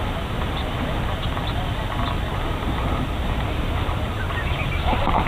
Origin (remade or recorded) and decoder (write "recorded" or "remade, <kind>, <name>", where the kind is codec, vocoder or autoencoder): recorded